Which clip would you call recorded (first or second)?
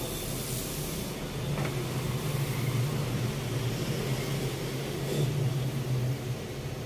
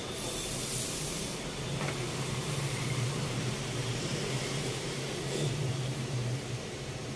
first